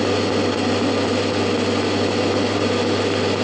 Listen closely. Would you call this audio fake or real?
real